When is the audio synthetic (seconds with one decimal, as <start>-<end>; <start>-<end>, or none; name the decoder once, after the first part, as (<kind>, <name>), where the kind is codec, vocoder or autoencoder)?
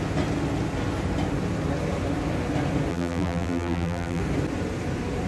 2.9-4.2 (vocoder, BigVGAN v2)